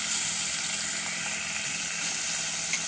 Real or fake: real